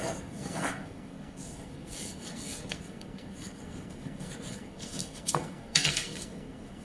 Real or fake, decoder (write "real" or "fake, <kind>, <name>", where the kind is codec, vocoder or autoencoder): fake, codec, SNAC